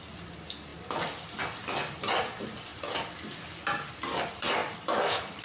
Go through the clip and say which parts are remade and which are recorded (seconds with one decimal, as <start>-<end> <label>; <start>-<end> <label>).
0.0-5.4 recorded